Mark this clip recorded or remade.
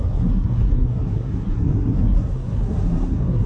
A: remade